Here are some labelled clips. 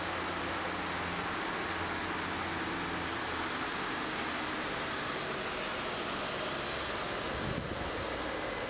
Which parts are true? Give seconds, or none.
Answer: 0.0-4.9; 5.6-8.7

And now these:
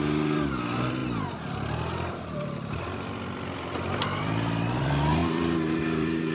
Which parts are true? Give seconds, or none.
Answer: 1.0-2.1